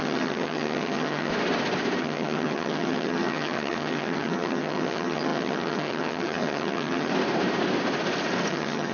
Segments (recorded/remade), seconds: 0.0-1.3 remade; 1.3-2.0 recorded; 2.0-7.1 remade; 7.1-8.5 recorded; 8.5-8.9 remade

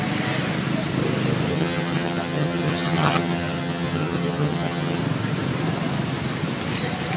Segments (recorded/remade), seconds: 0.0-1.5 recorded; 1.5-5.0 remade; 5.0-7.2 recorded

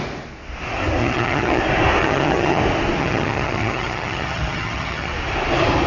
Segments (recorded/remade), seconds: 0.0-1.0 recorded; 1.0-1.6 remade; 1.6-2.0 recorded; 2.0-2.6 remade; 2.6-3.0 recorded; 3.0-5.1 remade; 5.1-5.9 recorded